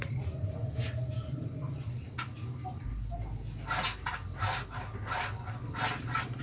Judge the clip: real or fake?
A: real